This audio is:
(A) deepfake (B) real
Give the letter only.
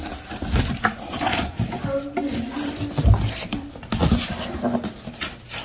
B